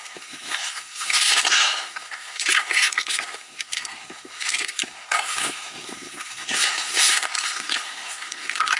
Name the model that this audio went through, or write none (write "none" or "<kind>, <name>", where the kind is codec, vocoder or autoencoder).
codec, SNAC